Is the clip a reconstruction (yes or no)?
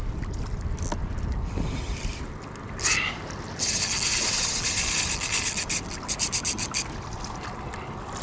no